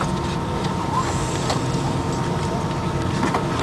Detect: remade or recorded remade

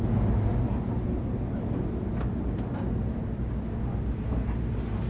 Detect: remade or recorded recorded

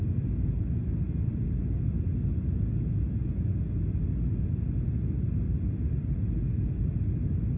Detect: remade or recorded recorded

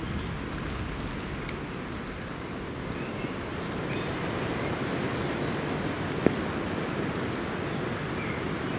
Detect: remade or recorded recorded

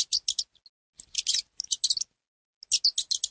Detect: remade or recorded recorded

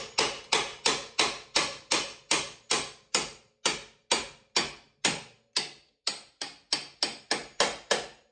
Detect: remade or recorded recorded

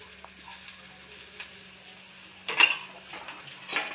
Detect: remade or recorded recorded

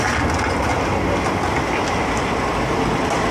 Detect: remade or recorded recorded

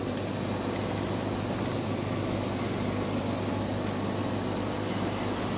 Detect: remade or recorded recorded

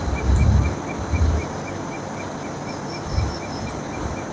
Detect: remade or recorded recorded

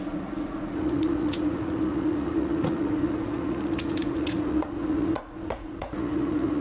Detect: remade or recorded remade